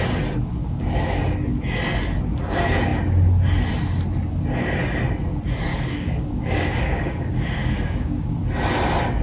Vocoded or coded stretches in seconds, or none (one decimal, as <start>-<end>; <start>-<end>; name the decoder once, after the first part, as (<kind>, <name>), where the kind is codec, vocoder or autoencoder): 0.6-1.2 (codec, DAC); 5.7-8.3